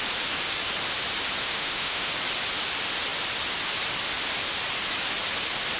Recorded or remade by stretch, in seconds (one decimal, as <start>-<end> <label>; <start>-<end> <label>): 0.0-1.4 recorded; 1.4-2.1 remade; 2.1-5.8 recorded